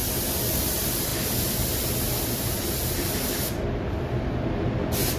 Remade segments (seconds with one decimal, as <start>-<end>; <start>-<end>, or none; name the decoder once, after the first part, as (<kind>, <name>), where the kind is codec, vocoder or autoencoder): none